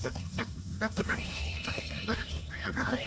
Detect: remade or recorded remade